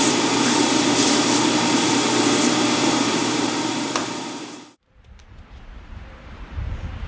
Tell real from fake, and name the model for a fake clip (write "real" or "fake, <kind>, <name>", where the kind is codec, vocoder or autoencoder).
fake, vocoder, BigVGAN v2